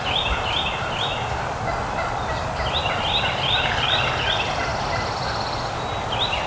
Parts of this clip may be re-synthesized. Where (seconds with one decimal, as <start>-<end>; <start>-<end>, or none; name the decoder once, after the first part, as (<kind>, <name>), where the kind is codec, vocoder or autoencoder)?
none